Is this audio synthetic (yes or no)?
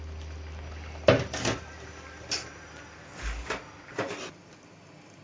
no